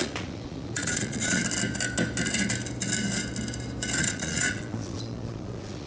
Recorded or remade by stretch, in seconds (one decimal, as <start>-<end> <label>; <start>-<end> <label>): 0.0-1.4 remade; 1.4-4.0 recorded; 4.0-5.9 remade